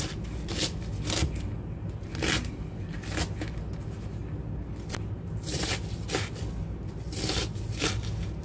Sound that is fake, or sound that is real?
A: real